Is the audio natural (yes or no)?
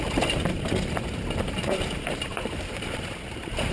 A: no